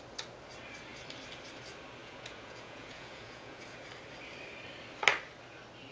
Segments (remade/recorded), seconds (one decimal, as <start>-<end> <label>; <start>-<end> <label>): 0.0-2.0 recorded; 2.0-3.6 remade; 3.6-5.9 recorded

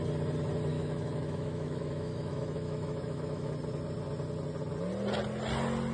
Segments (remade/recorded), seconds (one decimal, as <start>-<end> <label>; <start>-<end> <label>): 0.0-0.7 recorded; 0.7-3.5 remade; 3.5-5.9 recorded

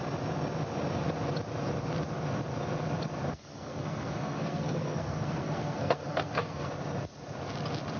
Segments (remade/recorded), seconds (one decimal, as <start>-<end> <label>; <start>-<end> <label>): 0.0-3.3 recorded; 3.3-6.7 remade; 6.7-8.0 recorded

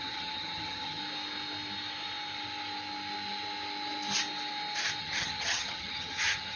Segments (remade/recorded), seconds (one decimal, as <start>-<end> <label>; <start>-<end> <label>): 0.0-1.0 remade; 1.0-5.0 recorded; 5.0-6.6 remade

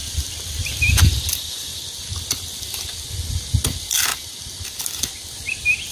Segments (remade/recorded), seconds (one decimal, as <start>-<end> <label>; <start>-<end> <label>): 0.0-5.9 recorded

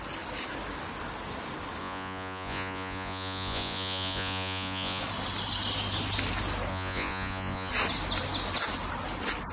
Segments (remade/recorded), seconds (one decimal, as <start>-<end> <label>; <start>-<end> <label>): 0.0-1.8 recorded; 1.8-5.0 remade; 5.0-6.7 recorded; 6.7-7.7 remade; 7.7-9.5 recorded

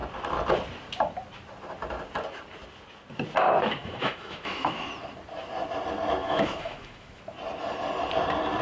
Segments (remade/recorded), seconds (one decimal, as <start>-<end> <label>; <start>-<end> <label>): 0.0-3.8 recorded; 3.8-4.9 remade; 4.9-6.2 recorded; 6.2-7.2 remade; 7.2-8.6 recorded